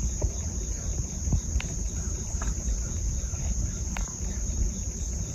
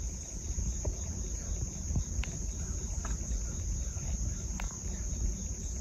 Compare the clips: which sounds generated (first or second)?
first